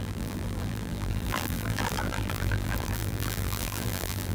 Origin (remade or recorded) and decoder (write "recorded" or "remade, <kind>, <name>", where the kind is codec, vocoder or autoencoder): remade, vocoder, BigVGAN v2